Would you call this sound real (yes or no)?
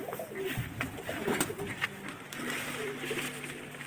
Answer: yes